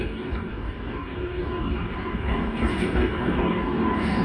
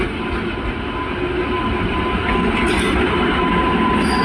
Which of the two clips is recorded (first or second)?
second